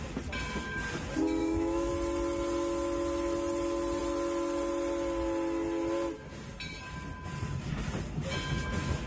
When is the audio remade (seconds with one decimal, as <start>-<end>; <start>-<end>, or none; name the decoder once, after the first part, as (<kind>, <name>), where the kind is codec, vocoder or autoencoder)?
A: 1.4-1.9 (autoencoder, DAC-VAE)